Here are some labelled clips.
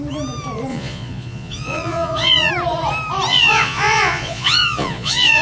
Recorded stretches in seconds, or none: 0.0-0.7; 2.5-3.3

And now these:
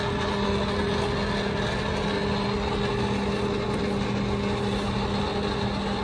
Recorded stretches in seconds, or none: 0.0-6.0

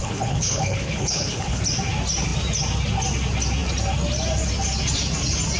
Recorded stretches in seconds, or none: 1.6-5.6

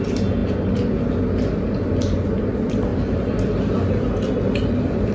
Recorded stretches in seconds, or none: 0.0-5.1

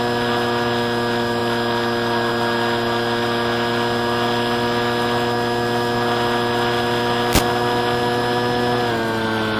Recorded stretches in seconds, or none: 0.0-9.6

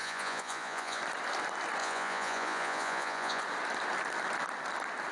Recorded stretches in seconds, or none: 1.0-1.8; 3.4-5.1

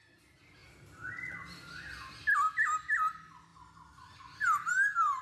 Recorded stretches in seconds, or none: 0.0-5.2

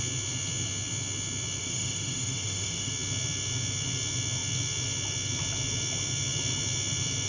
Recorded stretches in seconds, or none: 0.0-1.6; 2.9-7.3